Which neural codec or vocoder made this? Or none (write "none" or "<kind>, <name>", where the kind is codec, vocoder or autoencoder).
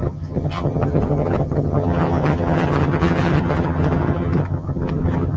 vocoder, HiFi-GAN